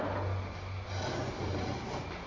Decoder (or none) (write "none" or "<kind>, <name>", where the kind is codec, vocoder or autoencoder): none